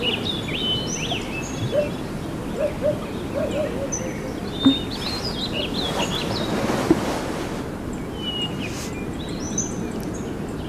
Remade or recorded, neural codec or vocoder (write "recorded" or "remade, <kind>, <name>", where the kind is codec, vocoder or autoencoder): recorded